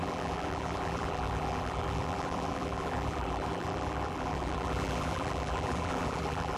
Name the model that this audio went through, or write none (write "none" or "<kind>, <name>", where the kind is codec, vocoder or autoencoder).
vocoder, BigVGAN v2